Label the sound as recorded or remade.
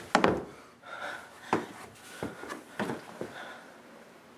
recorded